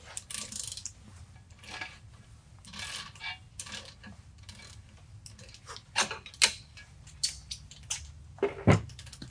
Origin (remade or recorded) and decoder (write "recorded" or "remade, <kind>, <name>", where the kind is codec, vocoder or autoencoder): recorded